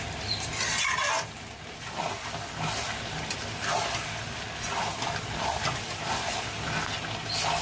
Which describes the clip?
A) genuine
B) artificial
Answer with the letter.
A